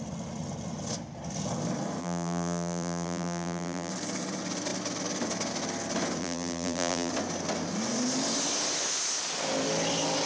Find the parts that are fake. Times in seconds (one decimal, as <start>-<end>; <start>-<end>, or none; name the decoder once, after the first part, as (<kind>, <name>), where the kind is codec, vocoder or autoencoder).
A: 2.0-3.9 (vocoder, BigVGAN v2); 6.2-7.1